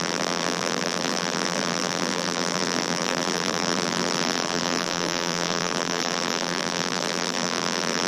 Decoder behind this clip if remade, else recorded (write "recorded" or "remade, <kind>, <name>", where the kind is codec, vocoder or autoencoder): remade, vocoder, BigVGAN v2